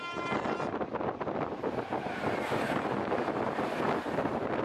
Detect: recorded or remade recorded